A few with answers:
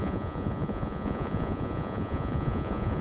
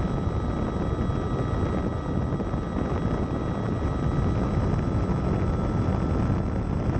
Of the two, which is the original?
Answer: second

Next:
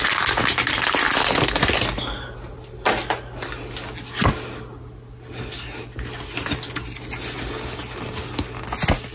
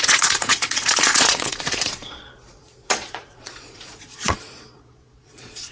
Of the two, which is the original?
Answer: first